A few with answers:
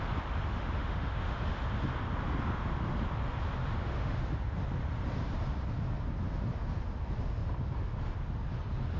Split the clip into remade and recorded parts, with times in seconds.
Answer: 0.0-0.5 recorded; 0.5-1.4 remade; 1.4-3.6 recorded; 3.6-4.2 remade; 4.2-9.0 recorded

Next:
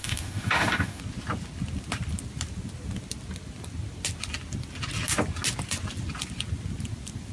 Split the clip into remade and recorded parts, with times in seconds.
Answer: 0.0-1.0 remade; 1.0-7.3 recorded

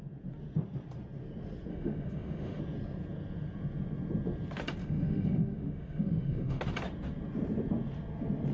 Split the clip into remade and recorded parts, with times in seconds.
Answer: 0.0-1.7 recorded; 1.7-2.6 remade; 2.6-4.8 recorded; 4.8-6.6 remade; 6.6-8.5 recorded

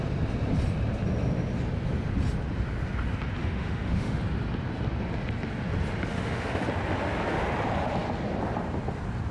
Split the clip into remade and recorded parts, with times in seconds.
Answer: 0.0-3.4 recorded; 3.4-4.2 remade; 4.2-6.1 recorded; 6.1-6.6 remade; 6.6-9.3 recorded

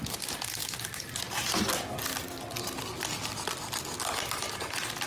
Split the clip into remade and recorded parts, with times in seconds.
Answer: 0.0-5.1 recorded

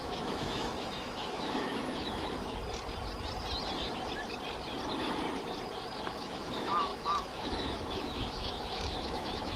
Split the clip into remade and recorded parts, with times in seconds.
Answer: 0.0-2.6 remade; 2.6-6.1 recorded; 6.1-9.6 remade